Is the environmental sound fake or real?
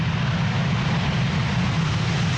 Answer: real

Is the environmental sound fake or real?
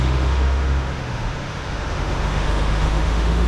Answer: fake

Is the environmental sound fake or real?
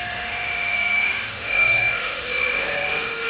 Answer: fake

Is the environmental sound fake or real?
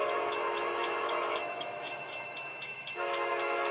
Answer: fake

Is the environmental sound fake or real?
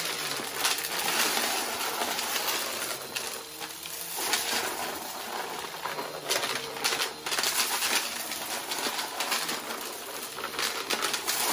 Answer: real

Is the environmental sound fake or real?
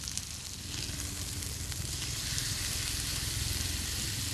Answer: real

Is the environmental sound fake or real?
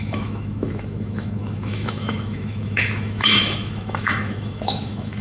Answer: fake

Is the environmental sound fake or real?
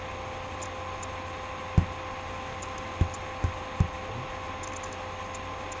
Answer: real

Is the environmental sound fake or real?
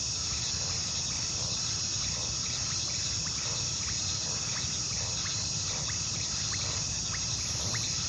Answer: real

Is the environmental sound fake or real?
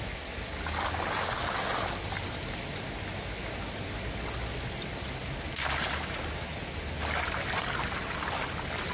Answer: real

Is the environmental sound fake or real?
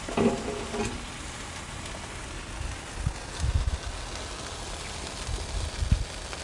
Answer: real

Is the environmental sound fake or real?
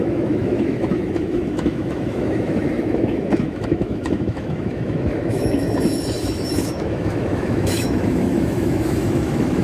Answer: fake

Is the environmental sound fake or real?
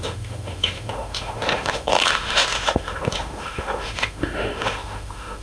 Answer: fake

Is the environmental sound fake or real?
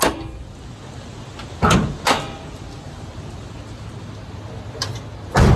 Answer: real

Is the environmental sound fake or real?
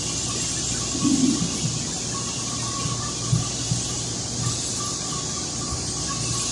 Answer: real